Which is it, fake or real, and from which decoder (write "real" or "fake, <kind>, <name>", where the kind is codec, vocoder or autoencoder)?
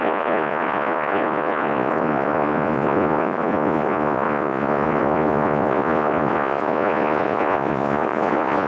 fake, vocoder, Vocos